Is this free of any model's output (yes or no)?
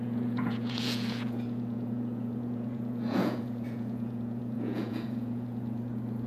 no